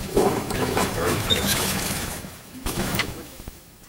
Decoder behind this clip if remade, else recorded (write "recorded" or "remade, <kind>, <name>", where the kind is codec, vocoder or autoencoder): remade, autoencoder, DAC-VAE